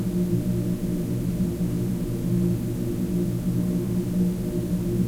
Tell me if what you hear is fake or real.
real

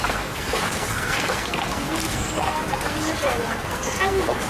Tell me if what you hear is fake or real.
fake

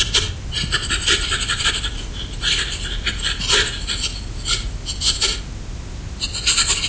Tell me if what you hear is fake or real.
real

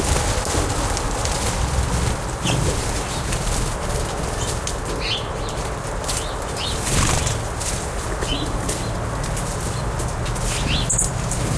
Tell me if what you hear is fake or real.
real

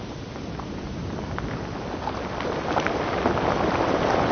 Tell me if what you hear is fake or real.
real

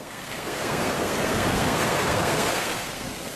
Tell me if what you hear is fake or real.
fake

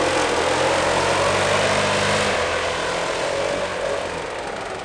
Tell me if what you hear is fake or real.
real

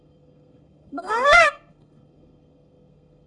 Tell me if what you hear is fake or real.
fake